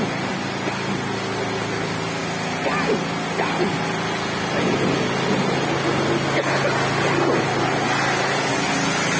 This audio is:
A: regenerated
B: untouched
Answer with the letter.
B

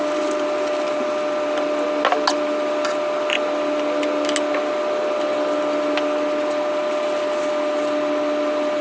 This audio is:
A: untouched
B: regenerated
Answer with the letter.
A